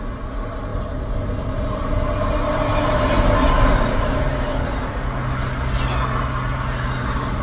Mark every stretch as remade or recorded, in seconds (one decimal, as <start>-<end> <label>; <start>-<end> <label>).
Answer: 0.0-7.4 recorded